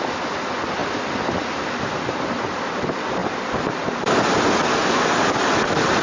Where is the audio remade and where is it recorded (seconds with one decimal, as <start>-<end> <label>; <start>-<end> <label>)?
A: 0.0-0.8 recorded; 0.8-2.6 remade; 2.6-3.2 recorded; 3.2-3.8 remade; 3.8-4.8 recorded; 4.8-6.0 remade